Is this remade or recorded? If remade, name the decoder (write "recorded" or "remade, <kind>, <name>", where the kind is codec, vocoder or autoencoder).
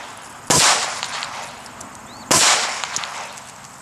recorded